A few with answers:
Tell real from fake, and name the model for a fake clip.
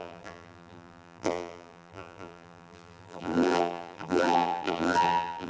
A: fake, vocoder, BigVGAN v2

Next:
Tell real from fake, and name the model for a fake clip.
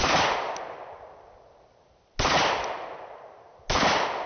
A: real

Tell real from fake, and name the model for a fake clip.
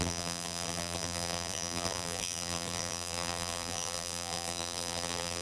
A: fake, vocoder, BigVGAN v2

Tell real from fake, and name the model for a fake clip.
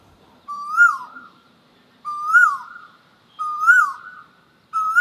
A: fake, vocoder, BigVGAN v2